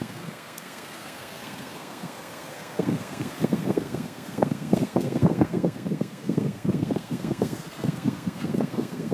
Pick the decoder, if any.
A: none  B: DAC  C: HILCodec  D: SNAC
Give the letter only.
D